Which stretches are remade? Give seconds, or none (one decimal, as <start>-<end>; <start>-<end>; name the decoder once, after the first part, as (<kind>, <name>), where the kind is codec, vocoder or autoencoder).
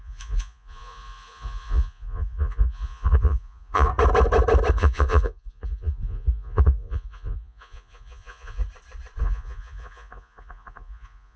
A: 0.0-3.9 (vocoder, Vocos); 4.7-8.6; 9.2-11.4